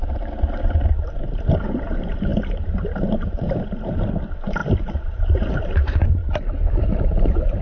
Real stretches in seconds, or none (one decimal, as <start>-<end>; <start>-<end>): 6.2-6.8